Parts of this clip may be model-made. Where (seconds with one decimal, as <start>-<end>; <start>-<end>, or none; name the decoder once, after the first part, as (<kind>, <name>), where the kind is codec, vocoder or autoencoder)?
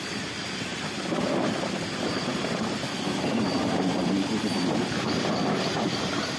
0.0-6.4 (vocoder, BigVGAN v2)